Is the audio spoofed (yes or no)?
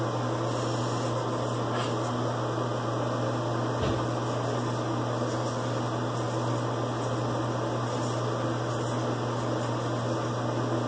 no